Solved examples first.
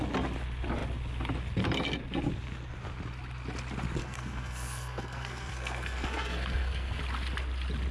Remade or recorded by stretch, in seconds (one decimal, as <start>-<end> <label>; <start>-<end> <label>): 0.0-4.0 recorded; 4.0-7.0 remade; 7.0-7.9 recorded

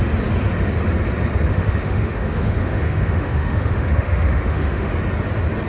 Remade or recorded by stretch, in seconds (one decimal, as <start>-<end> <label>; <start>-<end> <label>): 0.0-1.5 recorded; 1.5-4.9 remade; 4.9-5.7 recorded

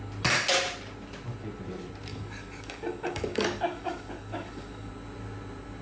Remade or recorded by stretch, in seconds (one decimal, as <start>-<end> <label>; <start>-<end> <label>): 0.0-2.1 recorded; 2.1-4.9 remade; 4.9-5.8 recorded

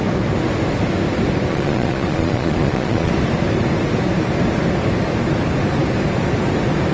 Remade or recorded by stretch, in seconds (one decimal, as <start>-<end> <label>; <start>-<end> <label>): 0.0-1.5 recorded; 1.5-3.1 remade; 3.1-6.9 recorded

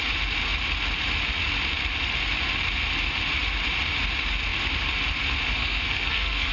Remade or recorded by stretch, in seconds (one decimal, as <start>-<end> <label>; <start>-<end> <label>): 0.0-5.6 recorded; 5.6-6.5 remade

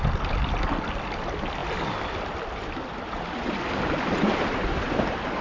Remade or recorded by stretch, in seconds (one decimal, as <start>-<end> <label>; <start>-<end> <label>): 0.0-5.4 recorded

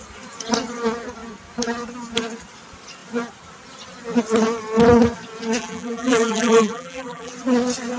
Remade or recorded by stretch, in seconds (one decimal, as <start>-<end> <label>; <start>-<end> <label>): 0.0-5.6 recorded; 5.6-7.3 remade; 7.3-8.0 recorded